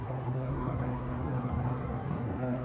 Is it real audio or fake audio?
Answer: fake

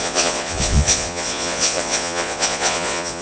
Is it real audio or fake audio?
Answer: fake